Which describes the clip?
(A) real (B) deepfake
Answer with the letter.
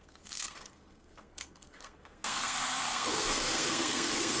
B